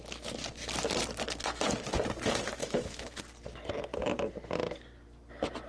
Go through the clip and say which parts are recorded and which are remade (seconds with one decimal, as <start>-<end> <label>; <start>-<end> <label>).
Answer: 0.0-2.6 recorded; 2.6-3.2 remade; 3.2-5.7 recorded